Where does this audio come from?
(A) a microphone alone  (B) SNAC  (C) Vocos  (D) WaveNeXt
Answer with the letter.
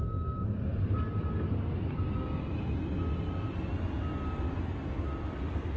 A